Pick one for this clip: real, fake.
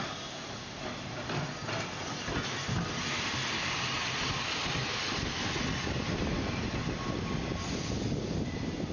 real